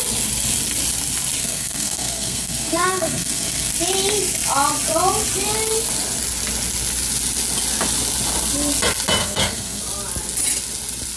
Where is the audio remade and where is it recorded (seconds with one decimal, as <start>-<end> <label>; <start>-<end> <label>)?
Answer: 0.0-1.4 recorded; 1.4-3.7 remade; 3.7-9.2 recorded; 9.2-9.8 remade; 9.8-11.2 recorded